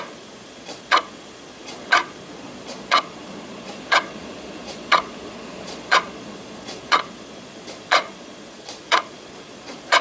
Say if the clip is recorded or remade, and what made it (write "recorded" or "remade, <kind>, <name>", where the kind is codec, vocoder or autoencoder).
remade, vocoder, Vocos